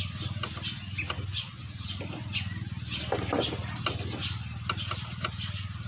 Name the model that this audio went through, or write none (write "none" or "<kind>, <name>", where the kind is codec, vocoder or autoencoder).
none